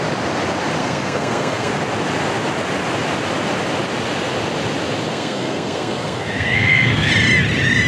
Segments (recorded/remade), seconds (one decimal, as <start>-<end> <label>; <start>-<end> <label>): 0.0-0.8 recorded; 0.8-1.7 remade; 1.7-5.1 recorded; 5.1-7.1 remade; 7.1-7.9 recorded